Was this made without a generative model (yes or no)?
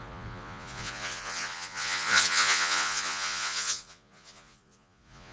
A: no